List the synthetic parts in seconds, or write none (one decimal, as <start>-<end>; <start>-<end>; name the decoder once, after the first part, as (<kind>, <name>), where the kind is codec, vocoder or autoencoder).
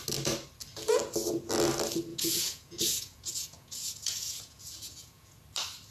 2.1-5.4 (vocoder, Vocos)